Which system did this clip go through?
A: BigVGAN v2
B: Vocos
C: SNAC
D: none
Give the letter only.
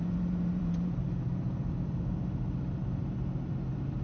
A